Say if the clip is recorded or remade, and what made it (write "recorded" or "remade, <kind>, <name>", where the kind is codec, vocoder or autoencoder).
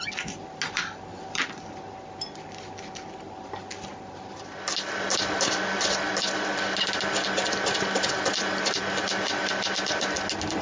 recorded